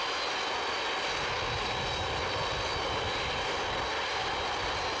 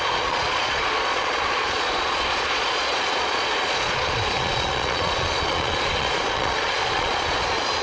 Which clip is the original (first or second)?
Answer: first